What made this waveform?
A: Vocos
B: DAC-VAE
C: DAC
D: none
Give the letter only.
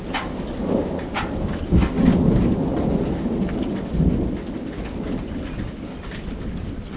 D